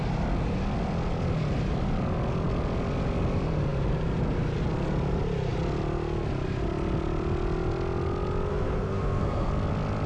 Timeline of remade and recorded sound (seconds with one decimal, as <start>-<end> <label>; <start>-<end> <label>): 0.0-8.5 recorded; 8.5-9.5 remade; 9.5-10.1 recorded